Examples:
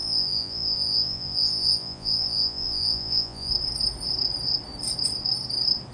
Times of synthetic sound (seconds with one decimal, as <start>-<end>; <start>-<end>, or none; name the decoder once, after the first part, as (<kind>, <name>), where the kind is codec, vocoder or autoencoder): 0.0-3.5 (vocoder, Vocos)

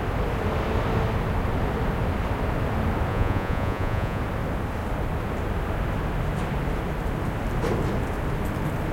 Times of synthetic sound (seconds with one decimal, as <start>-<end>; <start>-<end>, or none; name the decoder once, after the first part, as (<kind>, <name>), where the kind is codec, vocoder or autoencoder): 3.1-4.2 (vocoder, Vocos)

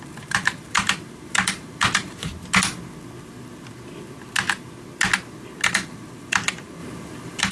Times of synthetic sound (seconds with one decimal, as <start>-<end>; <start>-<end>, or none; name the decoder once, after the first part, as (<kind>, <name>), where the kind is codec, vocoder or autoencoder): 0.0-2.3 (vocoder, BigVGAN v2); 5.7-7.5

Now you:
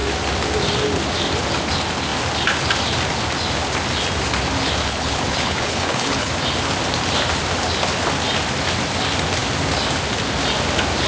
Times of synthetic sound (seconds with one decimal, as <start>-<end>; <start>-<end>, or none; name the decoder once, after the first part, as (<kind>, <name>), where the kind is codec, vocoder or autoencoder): 4.8-6.3 (codec, HILCodec)

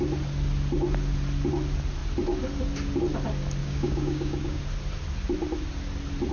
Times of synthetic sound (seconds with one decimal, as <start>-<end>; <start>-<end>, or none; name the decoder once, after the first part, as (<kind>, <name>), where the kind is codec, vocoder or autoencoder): 3.6-4.6 (codec, DAC)

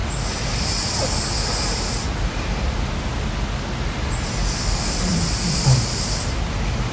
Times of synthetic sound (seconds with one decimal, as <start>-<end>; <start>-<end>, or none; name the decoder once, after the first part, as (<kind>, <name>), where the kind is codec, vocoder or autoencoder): 4.1-6.9 (vocoder, BigVGAN v2)

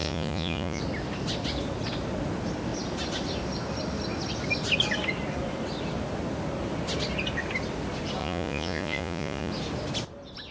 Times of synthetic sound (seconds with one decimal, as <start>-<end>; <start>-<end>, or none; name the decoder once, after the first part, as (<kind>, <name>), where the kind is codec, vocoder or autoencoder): 0.0-0.8 (vocoder, Vocos); 8.2-9.5